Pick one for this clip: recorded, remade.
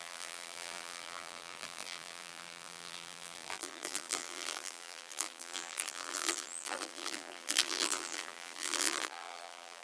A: remade